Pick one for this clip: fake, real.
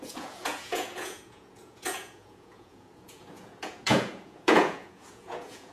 fake